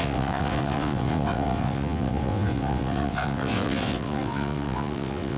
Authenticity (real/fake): fake